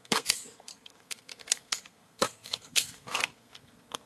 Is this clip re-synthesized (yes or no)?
yes